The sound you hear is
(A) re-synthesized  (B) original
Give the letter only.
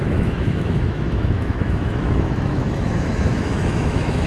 A